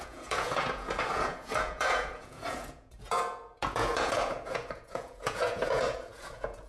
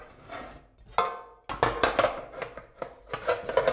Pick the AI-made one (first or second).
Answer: first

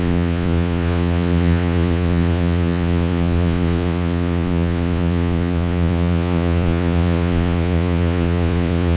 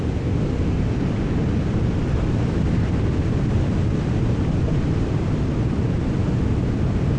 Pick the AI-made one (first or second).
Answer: first